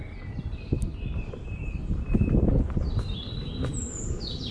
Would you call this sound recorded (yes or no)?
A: yes